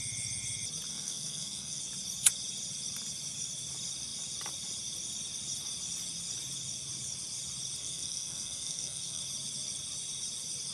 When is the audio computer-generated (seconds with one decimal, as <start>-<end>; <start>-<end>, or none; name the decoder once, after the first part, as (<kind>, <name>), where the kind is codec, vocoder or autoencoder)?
0.9-1.8 (codec, SNAC); 7.8-9.2